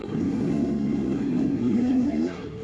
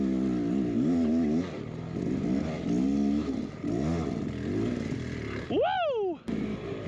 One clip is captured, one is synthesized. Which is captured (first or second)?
second